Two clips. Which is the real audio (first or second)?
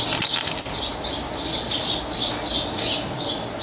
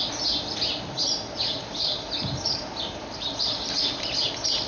first